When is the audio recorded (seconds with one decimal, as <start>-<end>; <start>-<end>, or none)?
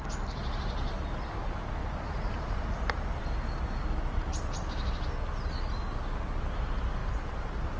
0.0-1.8; 3.2-7.0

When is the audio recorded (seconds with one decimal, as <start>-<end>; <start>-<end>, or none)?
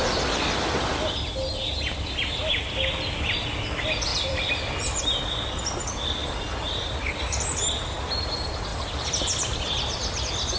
0.0-4.1; 5.0-6.2; 6.7-8.7; 10.2-10.6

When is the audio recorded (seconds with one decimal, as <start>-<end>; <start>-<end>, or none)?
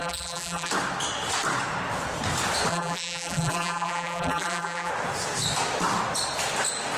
0.7-2.7; 4.9-7.0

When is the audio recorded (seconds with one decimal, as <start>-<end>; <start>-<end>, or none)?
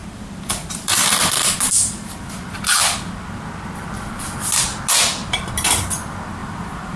2.1-5.2; 5.9-6.4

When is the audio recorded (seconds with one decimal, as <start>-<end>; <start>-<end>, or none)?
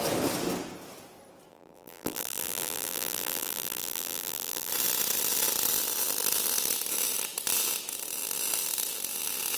0.0-1.5; 4.7-9.6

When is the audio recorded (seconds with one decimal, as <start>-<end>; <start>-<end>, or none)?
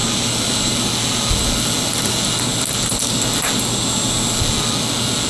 0.0-5.3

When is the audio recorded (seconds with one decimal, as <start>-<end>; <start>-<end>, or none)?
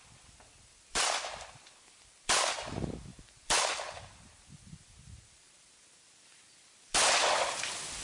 0.0-0.9; 1.6-8.0